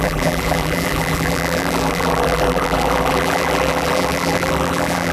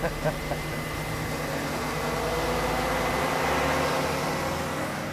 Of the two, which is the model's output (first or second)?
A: first